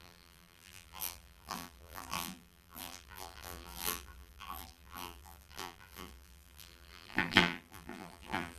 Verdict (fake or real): fake